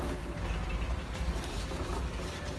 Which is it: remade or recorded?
remade